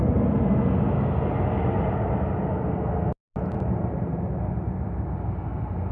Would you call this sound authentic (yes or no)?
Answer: yes